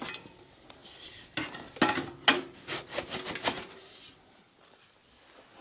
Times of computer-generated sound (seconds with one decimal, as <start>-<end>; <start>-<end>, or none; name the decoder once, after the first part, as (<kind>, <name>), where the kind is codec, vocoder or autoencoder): none